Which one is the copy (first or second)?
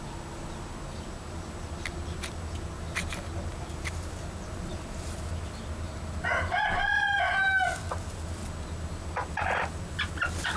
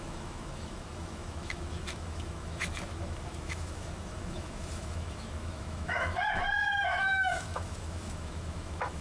second